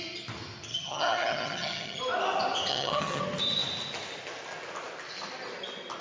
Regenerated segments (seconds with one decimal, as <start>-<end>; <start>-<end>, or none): 0.7-2.0; 2.7-3.2